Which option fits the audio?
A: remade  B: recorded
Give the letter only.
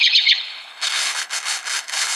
A